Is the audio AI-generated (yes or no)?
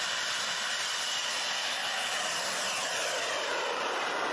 no